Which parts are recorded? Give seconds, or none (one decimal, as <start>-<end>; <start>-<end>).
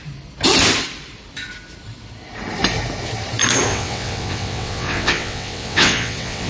0.0-3.7